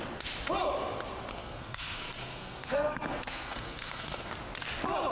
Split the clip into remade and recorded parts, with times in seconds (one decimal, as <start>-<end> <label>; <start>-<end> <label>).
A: 0.0-1.3 recorded; 1.3-4.3 remade; 4.3-5.1 recorded